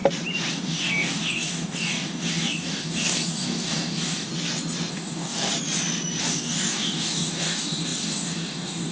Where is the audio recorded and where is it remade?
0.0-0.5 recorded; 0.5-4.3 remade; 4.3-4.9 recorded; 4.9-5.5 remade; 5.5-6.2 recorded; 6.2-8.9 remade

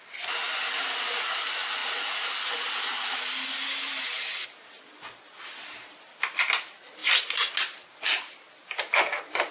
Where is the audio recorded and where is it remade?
0.0-9.5 recorded

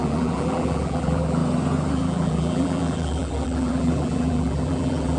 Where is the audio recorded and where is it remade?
0.0-1.4 remade; 1.4-1.9 recorded; 1.9-5.2 remade

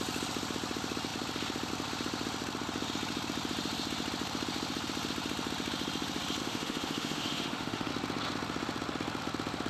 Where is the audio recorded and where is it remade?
0.0-6.4 recorded; 6.4-7.9 remade; 7.9-9.7 recorded

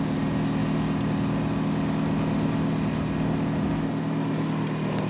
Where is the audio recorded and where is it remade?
0.0-5.1 recorded